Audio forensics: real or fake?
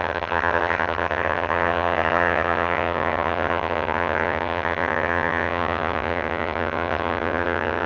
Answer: fake